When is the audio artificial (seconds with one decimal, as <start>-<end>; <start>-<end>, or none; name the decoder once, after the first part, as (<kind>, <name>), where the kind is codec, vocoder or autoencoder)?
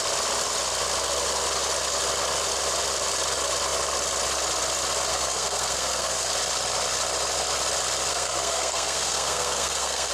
5.1-6.3 (codec, SNAC); 8.1-10.1